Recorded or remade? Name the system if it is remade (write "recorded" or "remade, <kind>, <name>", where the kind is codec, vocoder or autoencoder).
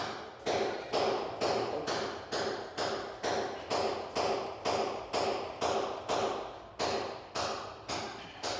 recorded